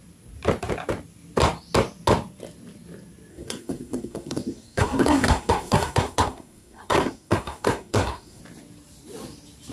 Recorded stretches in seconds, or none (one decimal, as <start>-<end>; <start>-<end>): 0.0-3.3; 8.4-9.7